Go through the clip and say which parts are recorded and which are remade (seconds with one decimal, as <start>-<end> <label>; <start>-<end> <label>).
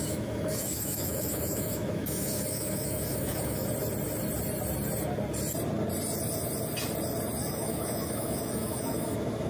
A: 0.0-3.6 remade; 3.6-7.5 recorded; 7.5-9.5 remade